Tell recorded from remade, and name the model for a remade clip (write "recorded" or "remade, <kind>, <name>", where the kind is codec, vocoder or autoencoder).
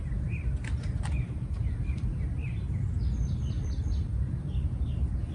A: recorded